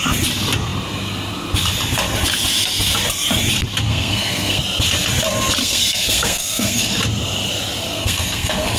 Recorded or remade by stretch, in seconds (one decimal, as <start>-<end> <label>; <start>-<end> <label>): 0.0-3.9 recorded; 3.9-4.6 remade; 4.6-5.6 recorded; 5.6-7.0 remade; 7.0-7.8 recorded; 7.8-8.8 remade